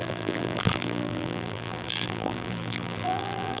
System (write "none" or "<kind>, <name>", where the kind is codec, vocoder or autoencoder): vocoder, BigVGAN v2